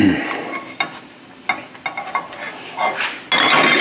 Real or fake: real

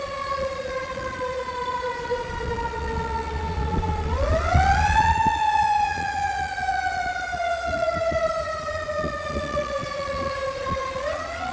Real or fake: fake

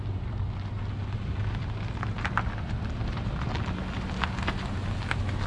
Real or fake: real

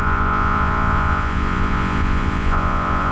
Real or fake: fake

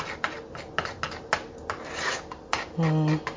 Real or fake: real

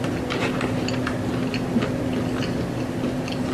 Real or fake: real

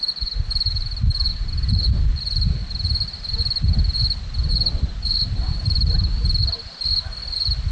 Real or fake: real